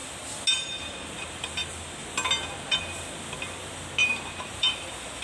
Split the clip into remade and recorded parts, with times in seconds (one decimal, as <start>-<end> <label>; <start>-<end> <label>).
0.0-4.0 recorded; 4.0-5.2 remade